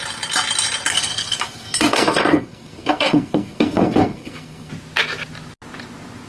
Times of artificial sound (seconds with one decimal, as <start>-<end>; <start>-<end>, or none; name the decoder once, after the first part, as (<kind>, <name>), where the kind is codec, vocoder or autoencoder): 0.9-4.7 (codec, SNAC)